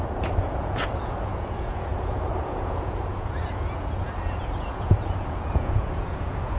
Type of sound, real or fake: fake